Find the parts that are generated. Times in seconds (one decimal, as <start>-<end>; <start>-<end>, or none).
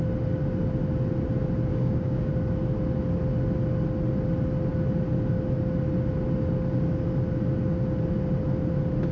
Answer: 1.7-2.3